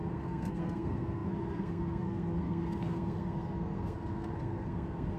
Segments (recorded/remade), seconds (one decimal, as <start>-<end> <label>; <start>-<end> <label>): 0.0-5.2 remade